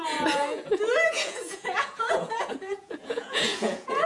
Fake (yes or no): yes